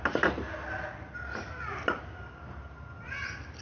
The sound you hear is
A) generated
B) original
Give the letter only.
B